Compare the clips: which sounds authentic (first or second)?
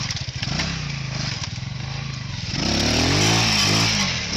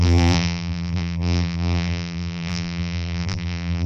first